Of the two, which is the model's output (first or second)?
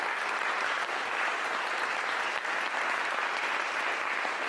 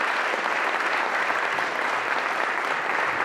second